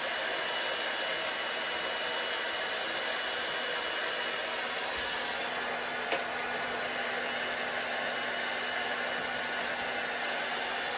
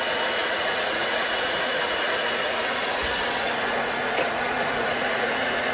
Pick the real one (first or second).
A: first